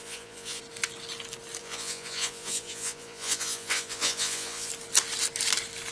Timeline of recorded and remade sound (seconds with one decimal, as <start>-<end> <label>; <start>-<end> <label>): 0.0-0.6 remade; 0.6-1.6 recorded; 1.6-4.7 remade; 4.7-5.9 recorded